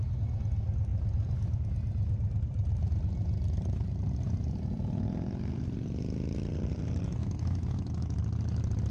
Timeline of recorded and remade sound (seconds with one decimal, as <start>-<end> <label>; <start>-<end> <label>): 0.0-7.2 recorded; 7.2-8.2 remade; 8.2-8.9 recorded